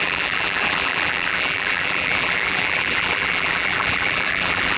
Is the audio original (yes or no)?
no